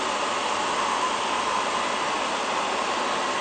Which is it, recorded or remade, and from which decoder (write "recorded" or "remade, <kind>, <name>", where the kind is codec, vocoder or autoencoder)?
remade, vocoder, BigVGAN v2